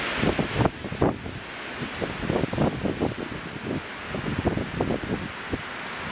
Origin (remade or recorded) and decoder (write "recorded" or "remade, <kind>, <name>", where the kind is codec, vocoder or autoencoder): recorded